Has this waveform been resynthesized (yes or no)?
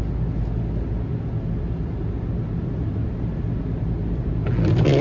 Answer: no